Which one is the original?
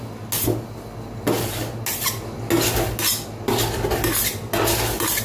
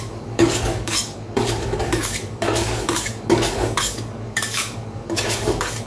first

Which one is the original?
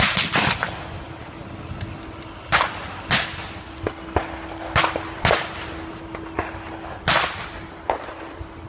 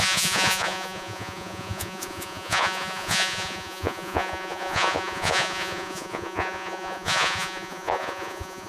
first